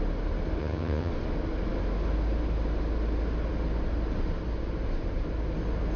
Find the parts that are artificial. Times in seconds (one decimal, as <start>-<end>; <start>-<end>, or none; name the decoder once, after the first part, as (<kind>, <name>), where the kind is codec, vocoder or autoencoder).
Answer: 0.6-1.1 (vocoder, HiFi-GAN)